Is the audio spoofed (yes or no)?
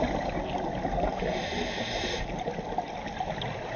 no